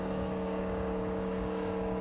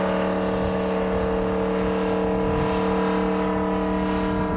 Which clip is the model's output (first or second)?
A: first